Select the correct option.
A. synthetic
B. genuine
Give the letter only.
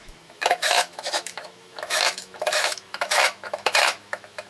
A